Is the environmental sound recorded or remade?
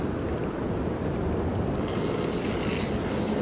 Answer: recorded